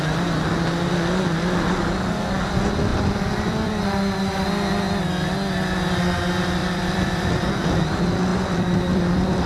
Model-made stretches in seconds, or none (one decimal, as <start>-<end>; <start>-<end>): 2.9-3.7; 6.6-7.5; 8.3-9.5